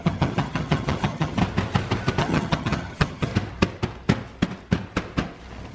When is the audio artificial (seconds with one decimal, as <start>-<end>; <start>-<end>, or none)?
0.0-1.4; 2.2-3.3